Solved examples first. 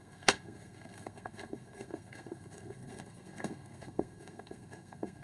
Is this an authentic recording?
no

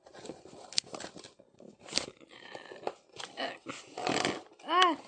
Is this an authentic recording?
yes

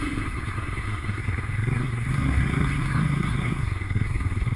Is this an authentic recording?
no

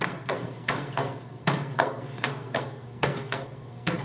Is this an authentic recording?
no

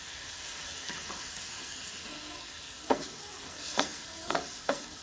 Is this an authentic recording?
no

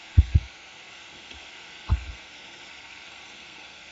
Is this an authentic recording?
no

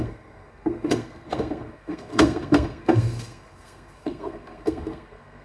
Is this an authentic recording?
no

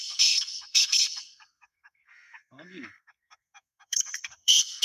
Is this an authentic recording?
no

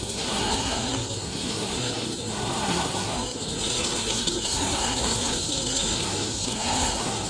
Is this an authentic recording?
no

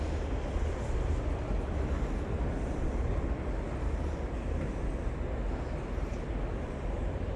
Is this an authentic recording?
yes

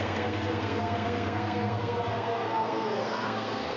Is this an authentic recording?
no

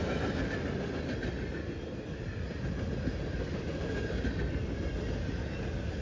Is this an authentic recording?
yes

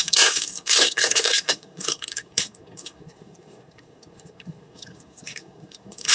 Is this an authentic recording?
no